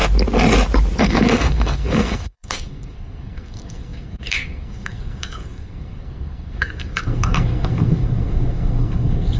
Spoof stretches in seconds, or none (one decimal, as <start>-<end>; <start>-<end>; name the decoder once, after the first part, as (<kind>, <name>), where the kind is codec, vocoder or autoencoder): 1.0-9.4 (codec, SNAC)

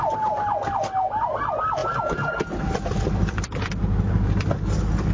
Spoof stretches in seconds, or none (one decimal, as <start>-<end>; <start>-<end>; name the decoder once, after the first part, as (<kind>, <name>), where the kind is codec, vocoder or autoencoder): 1.8-3.7 (vocoder, BigVGAN v2)

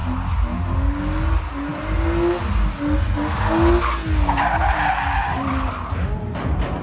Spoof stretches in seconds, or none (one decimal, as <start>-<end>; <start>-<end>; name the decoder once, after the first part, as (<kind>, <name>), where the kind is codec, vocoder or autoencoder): none

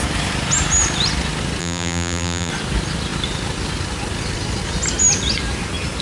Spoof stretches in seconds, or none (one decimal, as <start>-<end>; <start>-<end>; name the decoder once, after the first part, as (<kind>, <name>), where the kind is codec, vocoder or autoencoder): 1.6-2.5 (vocoder, BigVGAN v2)

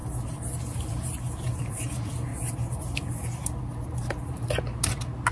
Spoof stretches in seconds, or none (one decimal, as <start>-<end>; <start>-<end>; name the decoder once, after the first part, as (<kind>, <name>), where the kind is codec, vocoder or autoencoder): 0.0-2.3 (vocoder, BigVGAN v2)

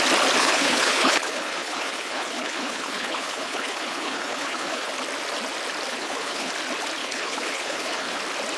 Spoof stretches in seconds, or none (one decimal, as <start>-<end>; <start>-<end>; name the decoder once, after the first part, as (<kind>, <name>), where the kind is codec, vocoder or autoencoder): 0.4-4.9 (codec, HILCodec); 5.9-6.5; 7.0-8.2

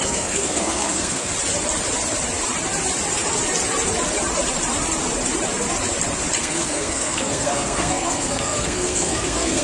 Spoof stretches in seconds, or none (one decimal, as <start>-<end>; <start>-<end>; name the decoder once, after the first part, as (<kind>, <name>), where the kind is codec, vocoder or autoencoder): 0.0-1.3 (codec, SNAC); 6.4-9.6